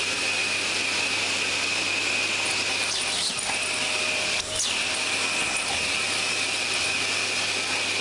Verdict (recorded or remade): recorded